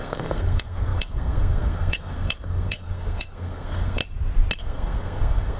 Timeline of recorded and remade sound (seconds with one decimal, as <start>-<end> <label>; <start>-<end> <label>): 0.0-4.0 remade; 4.0-4.6 recorded; 4.6-5.6 remade